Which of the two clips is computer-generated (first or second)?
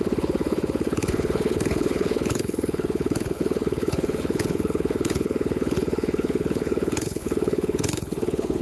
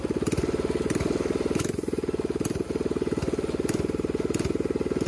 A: first